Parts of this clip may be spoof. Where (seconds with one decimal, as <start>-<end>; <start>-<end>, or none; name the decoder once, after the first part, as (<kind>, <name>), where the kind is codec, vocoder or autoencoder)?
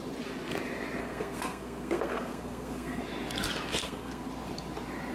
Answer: 1.0-3.0 (codec, SNAC); 3.8-4.3